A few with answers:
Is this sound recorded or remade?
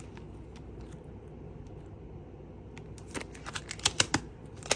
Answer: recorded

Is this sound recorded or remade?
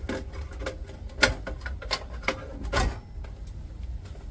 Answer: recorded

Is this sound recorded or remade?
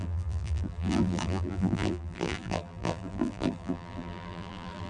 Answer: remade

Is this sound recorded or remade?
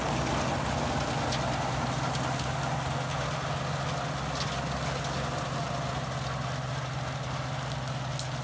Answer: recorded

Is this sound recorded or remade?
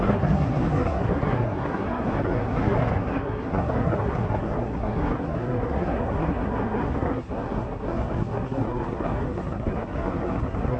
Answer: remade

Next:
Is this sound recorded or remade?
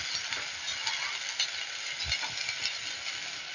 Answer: recorded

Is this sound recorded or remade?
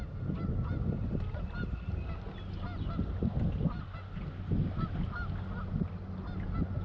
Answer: recorded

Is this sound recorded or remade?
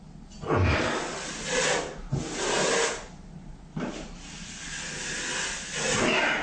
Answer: recorded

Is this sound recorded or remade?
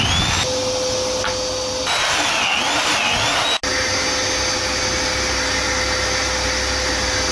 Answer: recorded